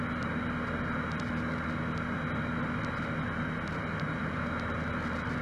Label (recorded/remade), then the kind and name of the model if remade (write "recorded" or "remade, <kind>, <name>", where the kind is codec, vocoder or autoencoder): recorded